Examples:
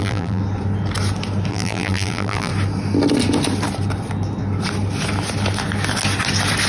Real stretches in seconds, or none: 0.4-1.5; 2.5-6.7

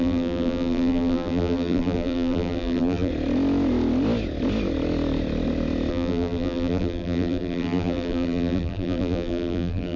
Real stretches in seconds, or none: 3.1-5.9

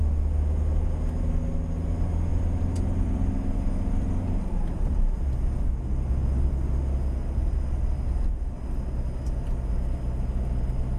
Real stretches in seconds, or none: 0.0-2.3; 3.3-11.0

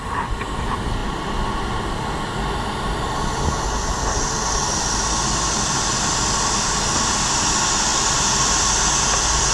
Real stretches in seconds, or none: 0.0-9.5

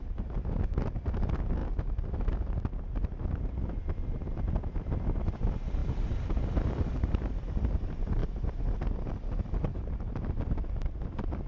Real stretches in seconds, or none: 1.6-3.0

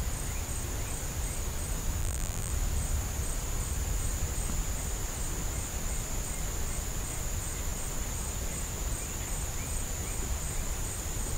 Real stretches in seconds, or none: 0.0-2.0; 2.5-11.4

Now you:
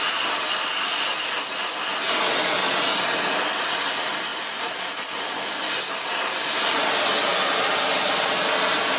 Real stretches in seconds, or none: 0.0-4.3; 5.0-7.3; 8.4-9.0